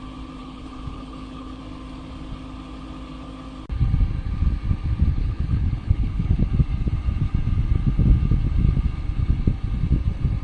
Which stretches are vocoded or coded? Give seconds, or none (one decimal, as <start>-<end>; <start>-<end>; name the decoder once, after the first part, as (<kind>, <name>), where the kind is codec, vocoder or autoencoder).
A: 0.4-1.6 (codec, HILCodec); 5.1-6.5